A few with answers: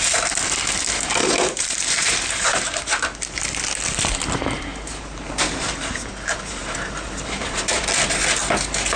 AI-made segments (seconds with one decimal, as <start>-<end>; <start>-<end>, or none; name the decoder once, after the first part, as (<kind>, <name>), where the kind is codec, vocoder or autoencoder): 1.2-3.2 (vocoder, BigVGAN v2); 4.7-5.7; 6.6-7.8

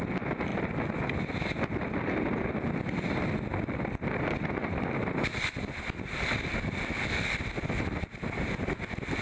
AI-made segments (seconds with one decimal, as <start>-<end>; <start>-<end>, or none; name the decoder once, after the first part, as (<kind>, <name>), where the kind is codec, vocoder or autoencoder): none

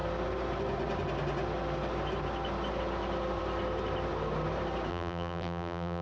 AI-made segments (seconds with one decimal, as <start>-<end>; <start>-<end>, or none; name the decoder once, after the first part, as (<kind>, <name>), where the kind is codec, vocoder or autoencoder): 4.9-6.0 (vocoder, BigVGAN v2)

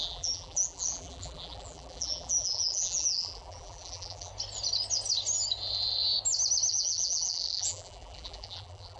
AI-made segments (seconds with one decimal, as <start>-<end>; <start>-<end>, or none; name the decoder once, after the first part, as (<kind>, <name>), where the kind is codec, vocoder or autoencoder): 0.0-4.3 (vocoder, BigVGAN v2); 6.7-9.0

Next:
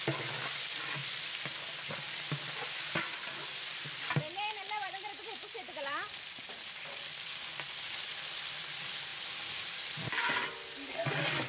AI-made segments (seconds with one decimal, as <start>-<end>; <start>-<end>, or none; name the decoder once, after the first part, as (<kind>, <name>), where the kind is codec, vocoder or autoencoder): 1.0-2.9 (vocoder, BigVGAN v2); 3.3-8.5; 9.1-11.5

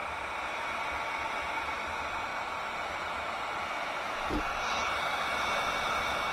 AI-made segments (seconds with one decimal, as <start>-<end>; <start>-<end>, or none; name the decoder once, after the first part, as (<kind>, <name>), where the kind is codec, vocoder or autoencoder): 0.0-6.3 (vocoder, BigVGAN v2)

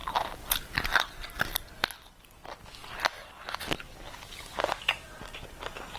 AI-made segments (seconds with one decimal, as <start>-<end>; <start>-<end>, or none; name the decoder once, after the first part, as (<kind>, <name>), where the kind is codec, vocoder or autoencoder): 0.0-0.8 (vocoder, BigVGAN v2)